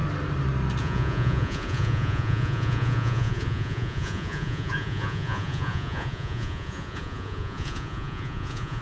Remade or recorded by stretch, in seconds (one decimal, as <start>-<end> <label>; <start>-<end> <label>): 0.0-0.8 recorded; 0.8-8.8 remade